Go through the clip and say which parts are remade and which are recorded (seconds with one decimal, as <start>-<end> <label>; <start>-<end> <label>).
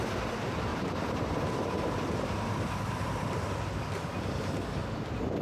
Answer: 0.0-0.7 recorded; 0.7-3.0 remade; 3.0-5.4 recorded